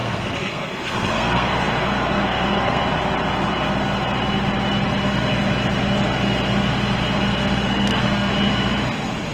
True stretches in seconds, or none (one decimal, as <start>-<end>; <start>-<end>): 2.8-7.3; 8.3-9.3